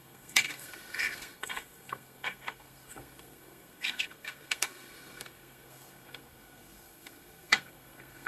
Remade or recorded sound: remade